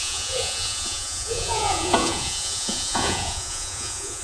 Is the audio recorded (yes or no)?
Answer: no